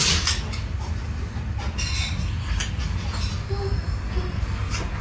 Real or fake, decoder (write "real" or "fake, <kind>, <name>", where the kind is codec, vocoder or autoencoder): real